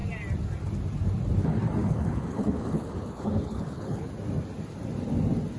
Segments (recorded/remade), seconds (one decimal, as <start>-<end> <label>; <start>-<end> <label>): 0.0-1.8 recorded; 1.8-4.1 remade; 4.1-5.6 recorded

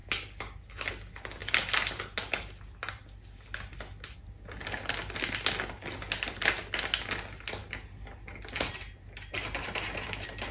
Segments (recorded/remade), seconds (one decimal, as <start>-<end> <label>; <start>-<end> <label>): 0.0-10.5 recorded

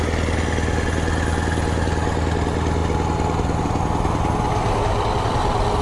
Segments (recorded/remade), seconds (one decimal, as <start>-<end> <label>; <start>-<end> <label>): 0.0-5.8 recorded

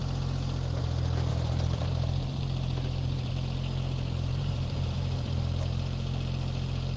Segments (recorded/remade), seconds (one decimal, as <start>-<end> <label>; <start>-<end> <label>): 0.0-1.3 recorded; 1.3-3.3 remade; 3.3-4.3 recorded; 4.3-5.4 remade; 5.4-7.0 recorded